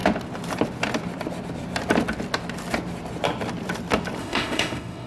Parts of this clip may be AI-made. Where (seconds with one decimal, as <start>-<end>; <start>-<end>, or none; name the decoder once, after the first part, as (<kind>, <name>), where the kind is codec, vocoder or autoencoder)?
4.2-5.1 (autoencoder, DAC-VAE)